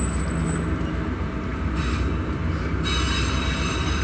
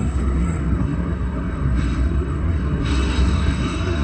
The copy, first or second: second